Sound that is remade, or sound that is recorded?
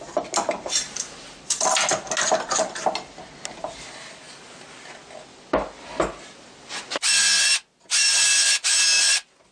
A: recorded